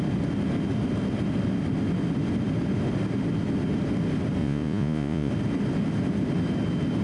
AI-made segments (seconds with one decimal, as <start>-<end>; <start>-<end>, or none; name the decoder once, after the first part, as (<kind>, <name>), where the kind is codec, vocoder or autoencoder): 4.4-5.3 (vocoder, Vocos)